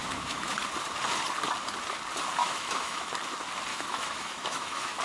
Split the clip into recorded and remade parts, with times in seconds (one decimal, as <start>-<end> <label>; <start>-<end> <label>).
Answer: 0.0-0.5 remade; 0.5-2.4 recorded; 2.4-3.1 remade; 3.1-3.7 recorded; 3.7-5.0 remade